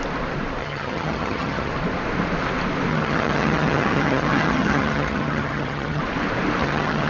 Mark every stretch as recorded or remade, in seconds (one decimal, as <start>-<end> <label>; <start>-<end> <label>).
0.0-0.6 recorded; 0.6-1.7 remade; 1.7-2.9 recorded; 2.9-6.0 remade; 6.0-6.6 recorded; 6.6-7.1 remade